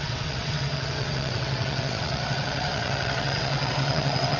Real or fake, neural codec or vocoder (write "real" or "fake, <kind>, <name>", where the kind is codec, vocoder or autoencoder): fake, vocoder, WaveNeXt